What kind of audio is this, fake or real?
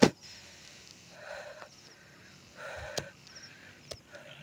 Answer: real